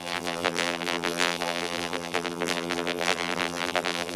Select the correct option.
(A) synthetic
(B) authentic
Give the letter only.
A